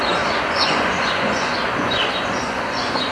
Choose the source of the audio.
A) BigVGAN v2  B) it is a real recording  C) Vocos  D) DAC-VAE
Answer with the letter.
C